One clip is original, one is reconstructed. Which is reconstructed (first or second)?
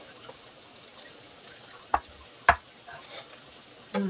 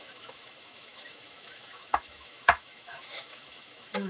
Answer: second